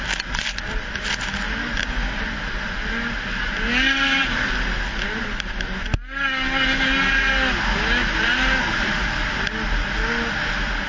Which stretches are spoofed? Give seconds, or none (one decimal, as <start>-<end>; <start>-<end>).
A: none